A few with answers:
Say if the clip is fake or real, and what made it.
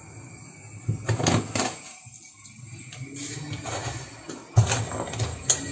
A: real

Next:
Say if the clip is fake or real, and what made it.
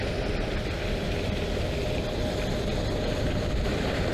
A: real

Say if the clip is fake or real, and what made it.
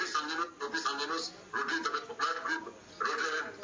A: real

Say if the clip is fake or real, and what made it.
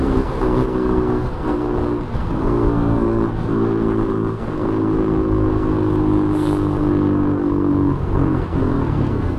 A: fake, codec, SNAC